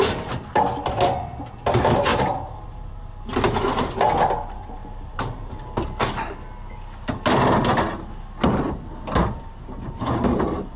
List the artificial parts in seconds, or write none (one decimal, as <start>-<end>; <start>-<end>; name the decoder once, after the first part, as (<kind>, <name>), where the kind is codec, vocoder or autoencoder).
2.1-3.1 (vocoder, BigVGAN v2); 4.8-5.6; 9.2-10.8